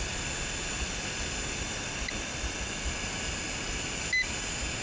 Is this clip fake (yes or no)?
no